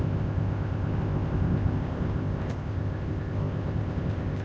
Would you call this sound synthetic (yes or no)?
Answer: yes